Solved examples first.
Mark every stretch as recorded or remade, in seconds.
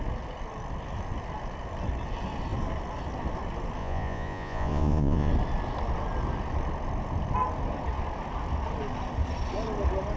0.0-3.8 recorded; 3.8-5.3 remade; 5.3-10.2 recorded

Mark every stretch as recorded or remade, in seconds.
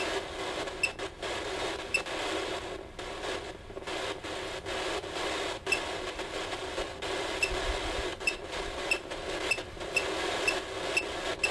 0.0-8.1 recorded; 8.1-9.9 remade; 9.9-11.5 recorded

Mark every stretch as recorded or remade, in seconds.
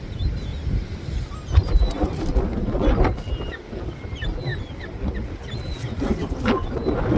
0.0-0.5 recorded; 0.5-1.3 remade; 1.3-7.2 recorded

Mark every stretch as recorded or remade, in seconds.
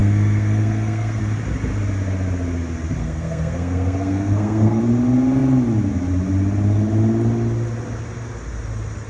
0.0-1.2 remade; 1.2-3.0 recorded; 3.0-4.8 remade; 4.8-9.1 recorded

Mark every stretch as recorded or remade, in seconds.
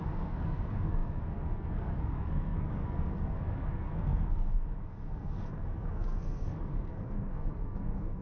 0.0-8.2 remade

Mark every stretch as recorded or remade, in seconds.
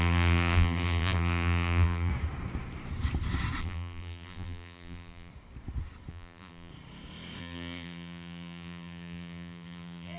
0.0-2.1 remade; 2.1-3.6 recorded; 3.6-5.3 remade; 5.3-6.1 recorded; 6.1-6.7 remade; 6.7-7.4 recorded; 7.4-10.2 remade